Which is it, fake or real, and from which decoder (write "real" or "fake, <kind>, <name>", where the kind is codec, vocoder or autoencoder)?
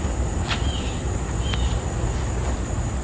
real